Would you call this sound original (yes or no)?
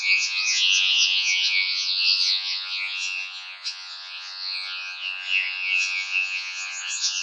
no